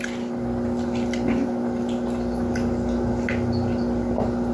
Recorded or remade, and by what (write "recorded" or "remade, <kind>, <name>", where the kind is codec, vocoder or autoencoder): recorded